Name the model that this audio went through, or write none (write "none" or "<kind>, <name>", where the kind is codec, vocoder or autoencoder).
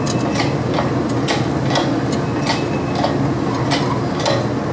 none